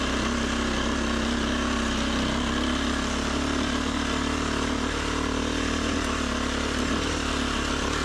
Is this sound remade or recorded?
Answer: recorded